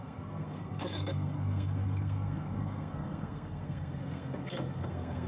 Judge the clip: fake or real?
fake